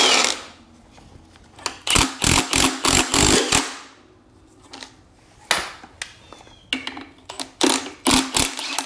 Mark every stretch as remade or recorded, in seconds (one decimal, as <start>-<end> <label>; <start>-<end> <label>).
0.0-8.9 recorded